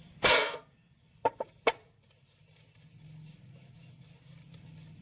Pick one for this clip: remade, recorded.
recorded